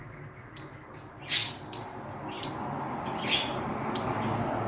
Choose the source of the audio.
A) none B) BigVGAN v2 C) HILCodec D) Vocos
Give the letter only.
A